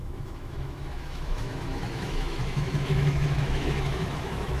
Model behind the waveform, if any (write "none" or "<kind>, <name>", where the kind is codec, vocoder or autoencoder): autoencoder, DAC-VAE